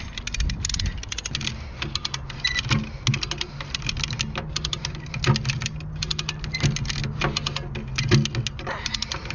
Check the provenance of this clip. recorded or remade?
recorded